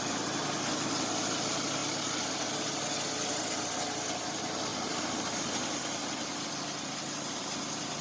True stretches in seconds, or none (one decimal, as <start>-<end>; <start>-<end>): 0.0-8.0